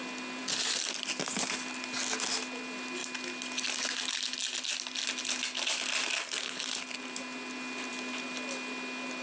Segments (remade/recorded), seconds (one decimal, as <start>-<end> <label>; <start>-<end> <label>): 0.0-9.2 recorded